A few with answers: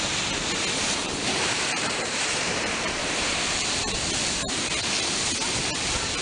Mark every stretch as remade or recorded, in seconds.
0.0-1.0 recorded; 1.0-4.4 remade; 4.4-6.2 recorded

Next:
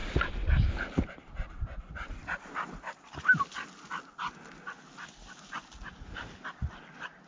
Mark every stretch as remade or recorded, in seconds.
0.0-7.3 recorded

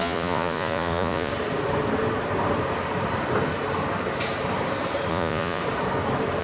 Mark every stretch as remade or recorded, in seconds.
0.0-1.3 remade; 1.3-5.1 recorded; 5.1-5.6 remade; 5.6-6.4 recorded

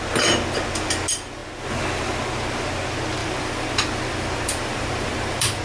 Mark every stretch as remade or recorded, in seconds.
0.0-3.2 recorded; 3.2-5.6 remade

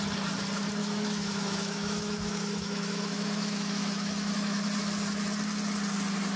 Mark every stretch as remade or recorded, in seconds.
0.0-0.8 recorded; 0.8-4.6 remade; 4.6-6.4 recorded

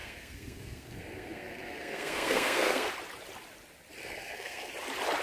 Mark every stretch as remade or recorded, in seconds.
0.0-2.9 remade; 2.9-4.0 recorded; 4.0-4.7 remade; 4.7-5.2 recorded

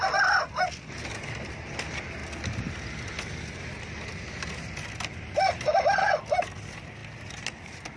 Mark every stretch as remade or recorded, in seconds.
0.0-8.0 recorded